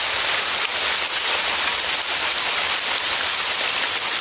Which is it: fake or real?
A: real